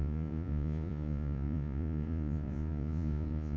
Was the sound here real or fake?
fake